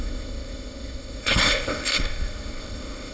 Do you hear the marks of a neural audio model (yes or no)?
yes